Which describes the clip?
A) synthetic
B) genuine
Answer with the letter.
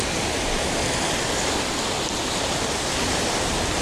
B